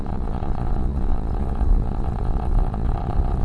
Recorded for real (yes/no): no